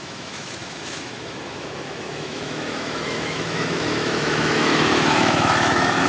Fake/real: fake